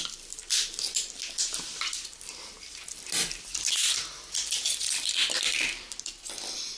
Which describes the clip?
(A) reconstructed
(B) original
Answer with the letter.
A